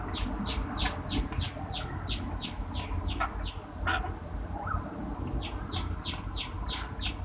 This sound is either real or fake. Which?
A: real